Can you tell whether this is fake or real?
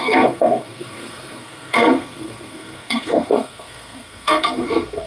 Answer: fake